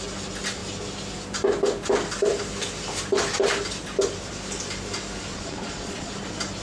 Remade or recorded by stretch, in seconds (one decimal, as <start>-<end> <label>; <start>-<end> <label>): 0.0-5.3 recorded; 5.3-6.1 remade; 6.1-6.6 recorded

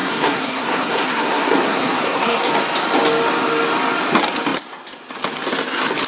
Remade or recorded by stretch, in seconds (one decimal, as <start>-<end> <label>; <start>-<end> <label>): 0.0-2.5 remade; 2.5-6.1 recorded

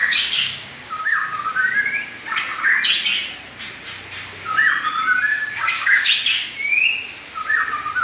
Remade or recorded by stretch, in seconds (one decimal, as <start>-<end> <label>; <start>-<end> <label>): 0.0-1.5 remade; 1.5-5.3 recorded; 5.3-6.1 remade; 6.1-8.0 recorded